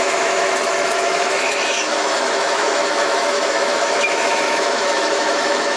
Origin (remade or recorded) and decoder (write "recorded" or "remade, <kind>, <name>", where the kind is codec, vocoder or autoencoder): remade, autoencoder, DAC-VAE